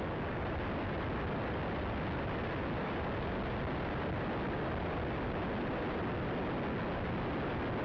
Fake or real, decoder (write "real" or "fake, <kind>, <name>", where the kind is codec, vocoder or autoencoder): real